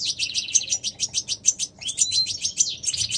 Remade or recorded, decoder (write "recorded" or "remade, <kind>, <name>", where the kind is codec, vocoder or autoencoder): recorded